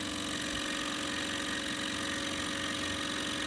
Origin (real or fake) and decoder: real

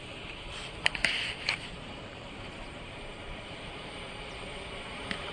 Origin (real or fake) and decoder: fake, vocoder, BigVGAN v2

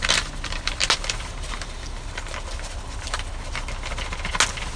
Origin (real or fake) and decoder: real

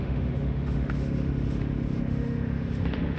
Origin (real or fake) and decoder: fake, autoencoder, DAC-VAE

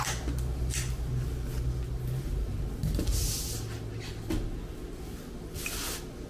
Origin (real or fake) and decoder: real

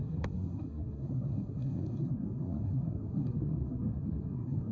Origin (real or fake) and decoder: fake, codec, SNAC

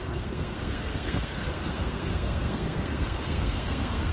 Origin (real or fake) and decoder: fake, codec, SNAC